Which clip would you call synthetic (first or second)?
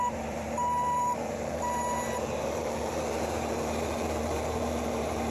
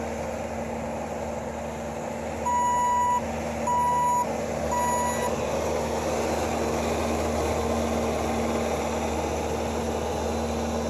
first